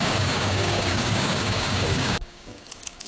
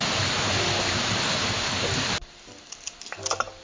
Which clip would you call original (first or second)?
second